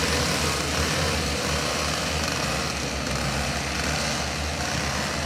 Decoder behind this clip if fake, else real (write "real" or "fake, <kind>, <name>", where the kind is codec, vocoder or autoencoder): real